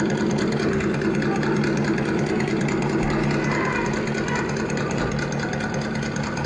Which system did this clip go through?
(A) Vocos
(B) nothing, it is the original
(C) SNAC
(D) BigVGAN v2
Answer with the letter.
B